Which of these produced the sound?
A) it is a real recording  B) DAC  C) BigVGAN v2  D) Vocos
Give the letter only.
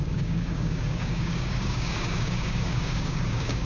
B